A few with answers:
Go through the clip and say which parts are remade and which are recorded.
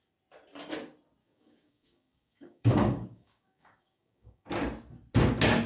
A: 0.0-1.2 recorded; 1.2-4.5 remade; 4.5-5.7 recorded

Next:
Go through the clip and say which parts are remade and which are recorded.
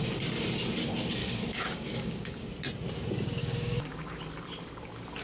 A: 0.0-1.2 recorded; 1.2-2.5 remade; 2.5-3.4 recorded; 3.4-4.2 remade; 4.2-5.2 recorded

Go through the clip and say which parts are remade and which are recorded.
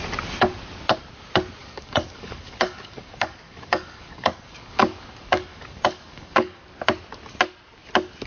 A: 0.0-1.6 recorded; 1.6-6.6 remade; 6.6-8.3 recorded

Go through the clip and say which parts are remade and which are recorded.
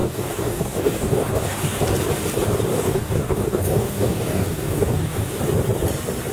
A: 0.0-1.8 remade; 1.8-2.7 recorded; 2.7-5.4 remade; 5.4-6.3 recorded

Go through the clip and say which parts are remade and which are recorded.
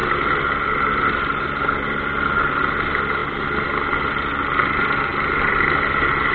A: 0.0-6.3 recorded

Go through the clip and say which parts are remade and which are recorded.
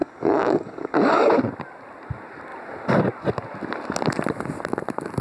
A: 0.0-1.3 remade; 1.3-5.2 recorded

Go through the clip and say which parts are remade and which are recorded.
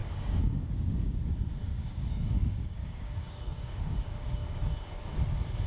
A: 0.0-1.2 remade; 1.2-1.7 recorded; 1.7-4.6 remade; 4.6-5.7 recorded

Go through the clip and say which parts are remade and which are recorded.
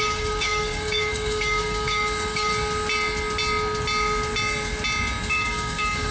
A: 0.0-2.5 remade; 2.5-5.3 recorded; 5.3-6.1 remade